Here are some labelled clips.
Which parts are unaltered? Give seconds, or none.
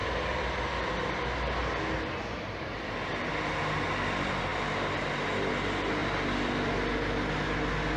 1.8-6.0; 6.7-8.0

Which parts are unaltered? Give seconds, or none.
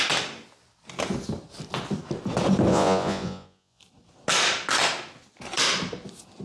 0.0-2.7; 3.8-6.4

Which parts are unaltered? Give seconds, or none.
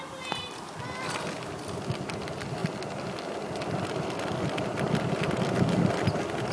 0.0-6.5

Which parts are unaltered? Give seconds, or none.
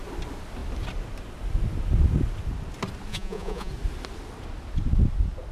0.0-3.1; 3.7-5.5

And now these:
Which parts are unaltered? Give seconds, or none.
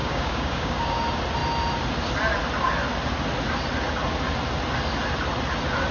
1.0-5.9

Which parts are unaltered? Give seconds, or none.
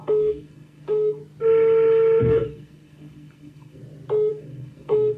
1.2-2.2; 3.8-4.3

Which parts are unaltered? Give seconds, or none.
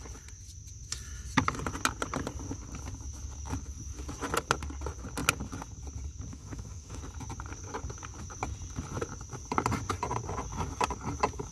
0.0-6.3; 7.0-11.5